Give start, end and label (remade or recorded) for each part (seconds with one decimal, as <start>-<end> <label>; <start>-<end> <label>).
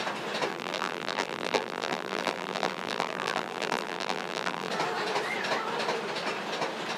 0.0-0.5 recorded; 0.5-4.7 remade; 4.7-7.0 recorded